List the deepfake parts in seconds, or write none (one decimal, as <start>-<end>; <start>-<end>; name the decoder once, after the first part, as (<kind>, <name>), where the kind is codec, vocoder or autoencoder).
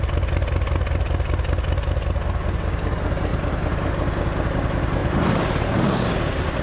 3.3-3.9 (vocoder, BigVGAN v2); 5.0-6.6